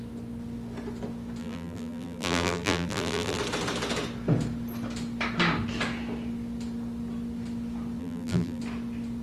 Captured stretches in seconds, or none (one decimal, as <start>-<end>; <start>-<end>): 0.0-1.4; 3.4-8.0; 8.6-9.2